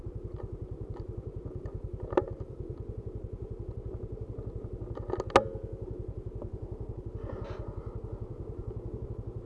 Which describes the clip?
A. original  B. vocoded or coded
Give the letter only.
A